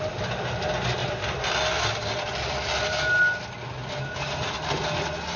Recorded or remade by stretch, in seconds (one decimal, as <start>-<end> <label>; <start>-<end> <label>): 0.0-5.4 recorded